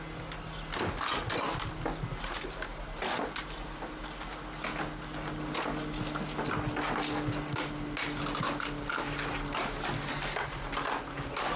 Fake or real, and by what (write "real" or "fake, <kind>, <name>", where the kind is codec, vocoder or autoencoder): real